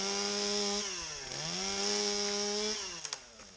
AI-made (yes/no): no